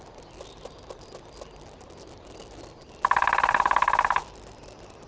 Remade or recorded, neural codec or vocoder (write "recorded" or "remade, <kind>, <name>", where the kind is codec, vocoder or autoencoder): recorded